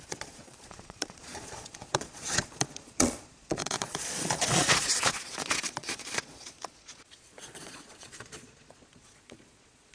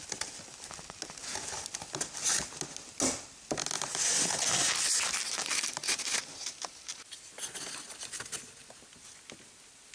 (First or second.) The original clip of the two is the second